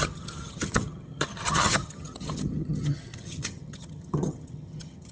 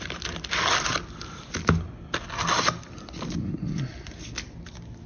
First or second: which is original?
second